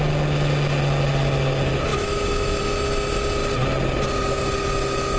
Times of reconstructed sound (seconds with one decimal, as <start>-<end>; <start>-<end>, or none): 1.9-2.6

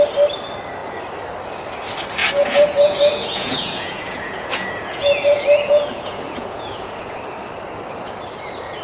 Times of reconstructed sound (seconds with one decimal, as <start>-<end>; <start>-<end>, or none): 2.2-7.2

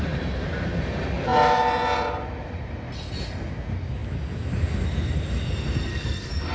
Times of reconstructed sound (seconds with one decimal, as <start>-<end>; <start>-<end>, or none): 5.9-6.5

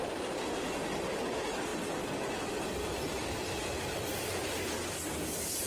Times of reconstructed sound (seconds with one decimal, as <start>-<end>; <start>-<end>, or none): none

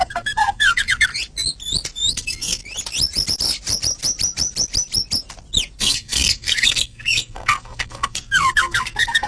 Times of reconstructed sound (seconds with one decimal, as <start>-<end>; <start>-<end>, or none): 0.0-1.1; 2.1-2.6; 5.8-9.3

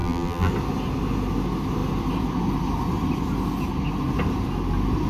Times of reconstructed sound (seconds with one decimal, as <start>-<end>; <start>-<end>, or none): 0.0-0.5

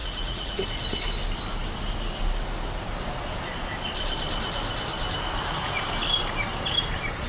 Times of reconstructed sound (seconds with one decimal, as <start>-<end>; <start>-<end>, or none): 0.0-0.6